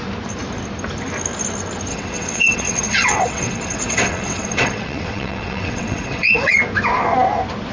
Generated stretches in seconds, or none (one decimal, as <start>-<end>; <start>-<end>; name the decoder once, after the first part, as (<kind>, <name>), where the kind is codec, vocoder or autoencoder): 1.9-6.5 (vocoder, WaveNeXt)